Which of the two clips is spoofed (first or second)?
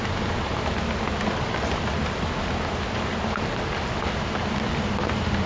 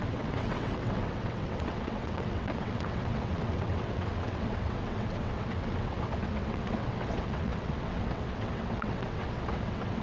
second